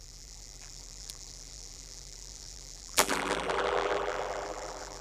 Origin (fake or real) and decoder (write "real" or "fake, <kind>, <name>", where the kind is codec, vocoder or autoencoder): fake, vocoder, BigVGAN v2